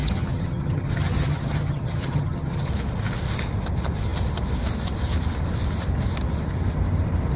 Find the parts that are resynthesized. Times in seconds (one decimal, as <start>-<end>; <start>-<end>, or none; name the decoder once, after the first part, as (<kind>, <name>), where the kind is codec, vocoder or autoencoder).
0.0-2.7 (vocoder, HiFi-GAN)